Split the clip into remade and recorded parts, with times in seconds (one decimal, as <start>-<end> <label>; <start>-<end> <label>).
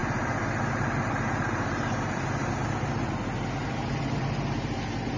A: 0.0-3.1 remade; 3.1-3.6 recorded; 3.6-4.2 remade; 4.2-5.2 recorded